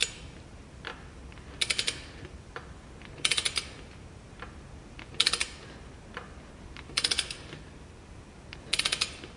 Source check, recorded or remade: recorded